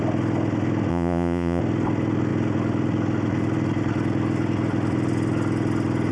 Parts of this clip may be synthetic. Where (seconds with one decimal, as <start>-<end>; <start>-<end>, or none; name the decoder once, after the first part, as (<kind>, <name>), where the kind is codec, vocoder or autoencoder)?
0.9-1.6 (vocoder, Vocos)